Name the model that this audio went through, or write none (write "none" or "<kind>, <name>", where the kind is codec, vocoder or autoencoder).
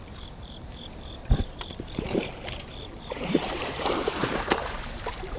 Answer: vocoder, BigVGAN v2